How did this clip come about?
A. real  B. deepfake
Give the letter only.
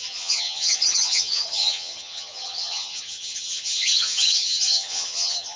B